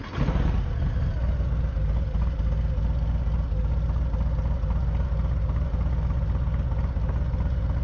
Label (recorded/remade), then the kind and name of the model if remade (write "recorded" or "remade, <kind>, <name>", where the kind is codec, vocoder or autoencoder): recorded